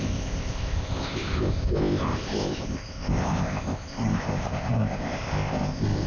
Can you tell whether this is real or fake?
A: fake